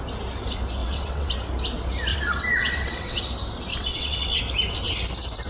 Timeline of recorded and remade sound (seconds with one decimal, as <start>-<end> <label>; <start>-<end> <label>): 0.0-0.8 recorded; 0.8-1.3 remade; 1.3-2.1 recorded; 2.1-3.2 remade; 3.2-3.7 recorded; 3.7-4.4 remade; 4.4-5.5 recorded